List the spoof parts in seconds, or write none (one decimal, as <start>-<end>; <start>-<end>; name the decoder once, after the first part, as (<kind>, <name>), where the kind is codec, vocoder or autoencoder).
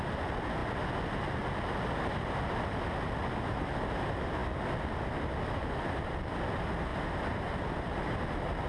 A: none